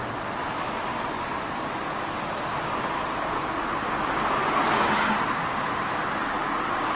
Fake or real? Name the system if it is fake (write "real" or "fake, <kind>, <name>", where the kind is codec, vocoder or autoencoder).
real